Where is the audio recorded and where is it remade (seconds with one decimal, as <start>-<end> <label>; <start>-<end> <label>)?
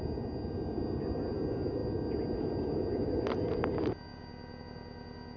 0.0-5.4 recorded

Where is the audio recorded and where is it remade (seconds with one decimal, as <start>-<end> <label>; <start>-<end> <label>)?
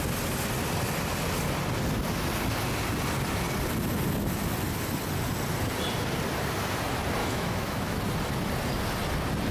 0.0-7.2 recorded; 7.2-8.0 remade; 8.0-9.5 recorded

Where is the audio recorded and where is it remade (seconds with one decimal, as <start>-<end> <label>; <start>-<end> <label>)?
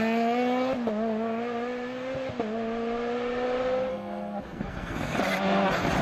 0.0-3.9 recorded; 3.9-5.2 remade; 5.2-6.0 recorded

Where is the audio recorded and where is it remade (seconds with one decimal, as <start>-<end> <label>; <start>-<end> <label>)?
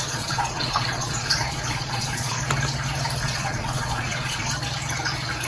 0.0-2.4 remade; 2.4-3.2 recorded; 3.2-4.5 remade; 4.5-5.5 recorded